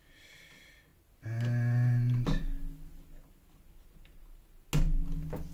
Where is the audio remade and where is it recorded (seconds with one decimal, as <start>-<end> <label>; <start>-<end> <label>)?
0.0-5.5 recorded